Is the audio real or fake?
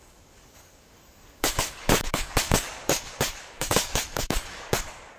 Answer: fake